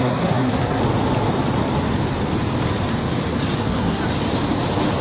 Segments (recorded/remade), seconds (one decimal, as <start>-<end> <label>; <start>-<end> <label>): 0.0-0.8 remade; 0.8-3.6 recorded; 3.6-4.0 remade; 4.0-5.0 recorded